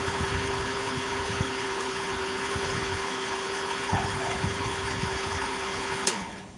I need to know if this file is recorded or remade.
remade